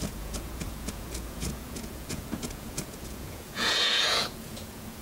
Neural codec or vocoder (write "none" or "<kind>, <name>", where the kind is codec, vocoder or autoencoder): vocoder, Vocos